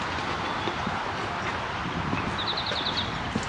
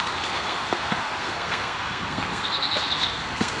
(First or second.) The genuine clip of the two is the first